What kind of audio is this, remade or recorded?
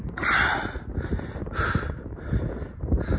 recorded